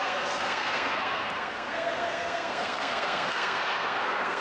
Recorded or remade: remade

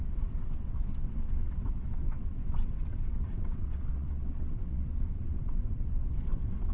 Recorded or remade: remade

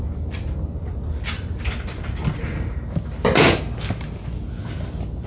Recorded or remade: recorded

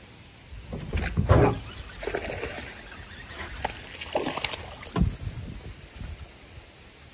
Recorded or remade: recorded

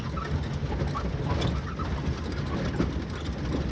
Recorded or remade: recorded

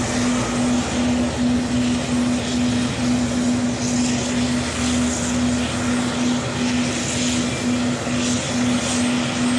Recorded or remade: recorded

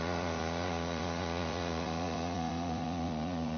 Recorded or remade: remade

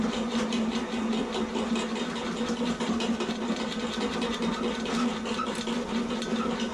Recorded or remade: recorded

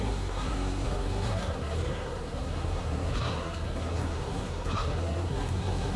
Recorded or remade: remade